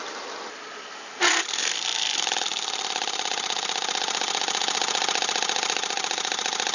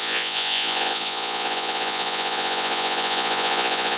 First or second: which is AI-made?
second